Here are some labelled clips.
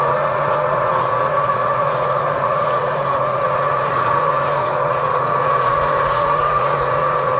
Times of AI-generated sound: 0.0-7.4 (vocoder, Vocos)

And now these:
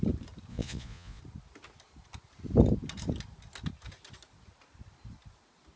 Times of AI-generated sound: 0.5-1.2 (vocoder, Vocos)

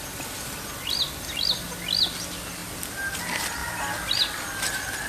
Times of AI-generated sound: none

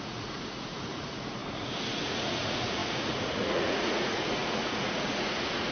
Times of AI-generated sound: 0.0-5.7 (vocoder, Vocos)